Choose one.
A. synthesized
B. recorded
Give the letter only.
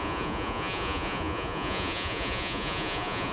A